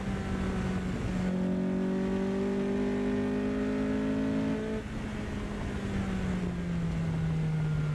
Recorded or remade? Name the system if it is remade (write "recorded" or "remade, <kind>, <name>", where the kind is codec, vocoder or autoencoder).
recorded